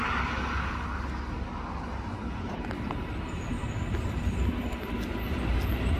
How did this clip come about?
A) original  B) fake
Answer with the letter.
A